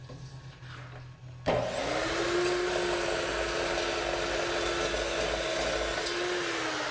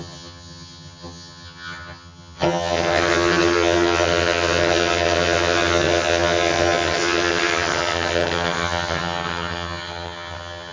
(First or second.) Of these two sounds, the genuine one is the first